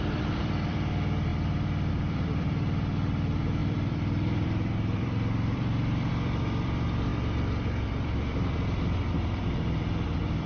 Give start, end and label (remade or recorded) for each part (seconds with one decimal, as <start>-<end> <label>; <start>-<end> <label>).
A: 0.0-1.3 remade; 1.3-1.9 recorded; 1.9-10.5 remade